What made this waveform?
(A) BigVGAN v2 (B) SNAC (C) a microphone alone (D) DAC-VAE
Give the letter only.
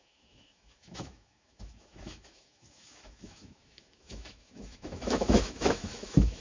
D